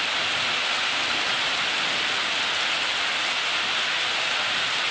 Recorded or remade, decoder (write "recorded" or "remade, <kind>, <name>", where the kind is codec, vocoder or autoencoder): recorded